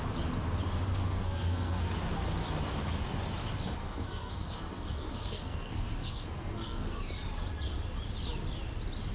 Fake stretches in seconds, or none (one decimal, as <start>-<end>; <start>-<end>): 0.9-1.9; 3.8-7.0